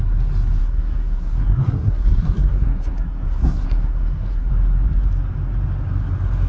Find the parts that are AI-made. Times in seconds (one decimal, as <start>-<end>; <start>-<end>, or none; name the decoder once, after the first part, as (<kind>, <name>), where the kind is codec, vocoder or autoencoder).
0.6-4.5 (codec, SNAC)